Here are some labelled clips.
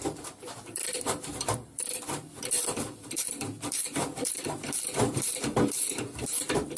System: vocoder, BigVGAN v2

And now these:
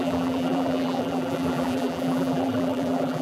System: vocoder, BigVGAN v2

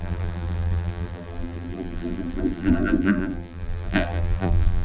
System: vocoder, BigVGAN v2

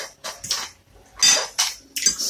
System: none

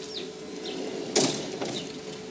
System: none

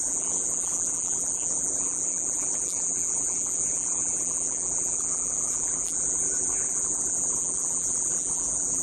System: vocoder, BigVGAN v2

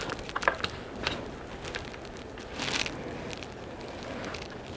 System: none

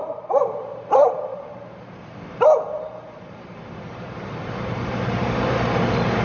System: vocoder, BigVGAN v2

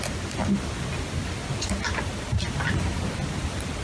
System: none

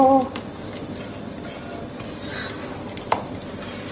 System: none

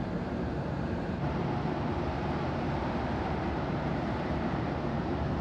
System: vocoder, BigVGAN v2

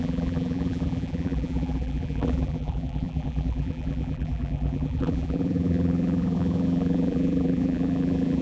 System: vocoder, BigVGAN v2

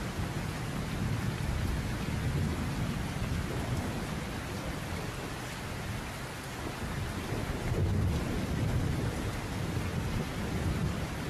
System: none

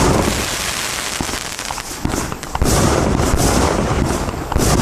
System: none